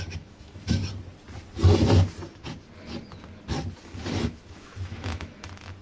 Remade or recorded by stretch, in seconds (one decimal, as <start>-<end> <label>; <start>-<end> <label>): 0.0-0.8 remade; 0.8-4.3 recorded; 4.3-5.8 remade